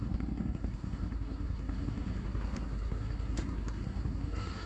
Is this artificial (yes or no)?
yes